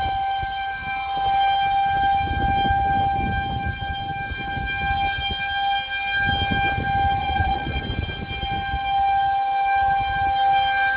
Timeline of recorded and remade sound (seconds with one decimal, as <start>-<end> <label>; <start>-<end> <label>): 0.0-7.2 recorded; 7.2-7.8 remade; 7.8-11.0 recorded